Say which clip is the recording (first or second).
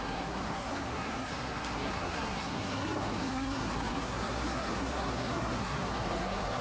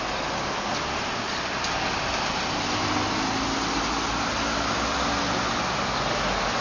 second